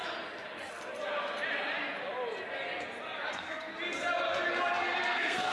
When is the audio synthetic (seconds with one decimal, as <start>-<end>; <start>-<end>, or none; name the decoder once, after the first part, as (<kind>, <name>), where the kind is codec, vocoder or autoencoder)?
3.3-3.7 (codec, SNAC); 5.1-5.5